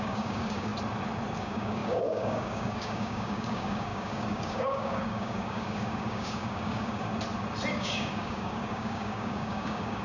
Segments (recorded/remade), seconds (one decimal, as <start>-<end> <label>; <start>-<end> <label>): 0.0-0.7 remade; 0.7-1.4 recorded; 1.4-7.1 remade; 7.1-7.7 recorded; 7.7-10.0 remade